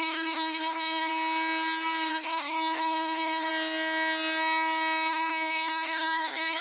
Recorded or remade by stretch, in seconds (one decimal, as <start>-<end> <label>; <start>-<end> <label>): 0.0-1.1 remade; 1.1-2.1 recorded; 2.1-3.5 remade; 3.5-5.1 recorded; 5.1-6.6 remade